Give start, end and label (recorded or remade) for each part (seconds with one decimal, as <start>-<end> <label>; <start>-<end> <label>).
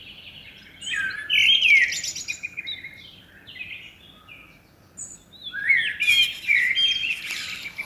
0.0-7.9 recorded